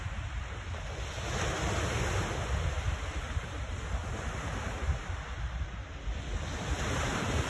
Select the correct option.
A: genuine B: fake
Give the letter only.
A